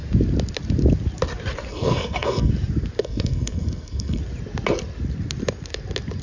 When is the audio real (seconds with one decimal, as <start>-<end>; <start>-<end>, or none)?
0.0-1.7; 2.5-3.0; 4.2-6.2